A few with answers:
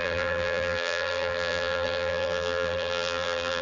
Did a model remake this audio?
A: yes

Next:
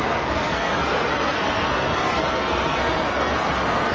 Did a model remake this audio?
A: yes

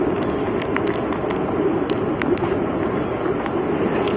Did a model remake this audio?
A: no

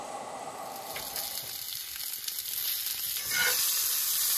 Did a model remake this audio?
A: no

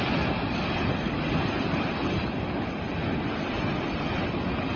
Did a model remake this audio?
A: no